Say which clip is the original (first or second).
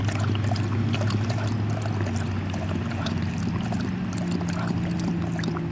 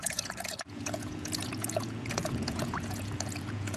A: first